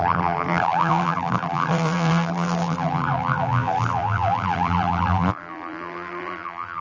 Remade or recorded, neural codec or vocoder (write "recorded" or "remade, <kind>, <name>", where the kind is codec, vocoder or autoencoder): remade, vocoder, BigVGAN v2